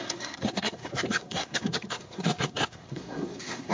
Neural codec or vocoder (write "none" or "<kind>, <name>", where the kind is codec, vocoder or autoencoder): codec, SNAC